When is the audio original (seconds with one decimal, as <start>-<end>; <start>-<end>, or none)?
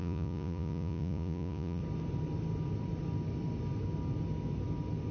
1.8-5.1